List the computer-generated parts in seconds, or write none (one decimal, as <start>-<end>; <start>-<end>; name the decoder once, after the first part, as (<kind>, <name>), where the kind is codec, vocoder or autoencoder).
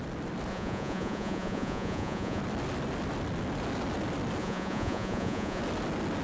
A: 0.5-2.4 (vocoder, Vocos); 4.4-5.6